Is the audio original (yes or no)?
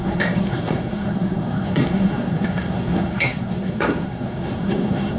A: no